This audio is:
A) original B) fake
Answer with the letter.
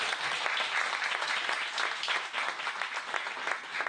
A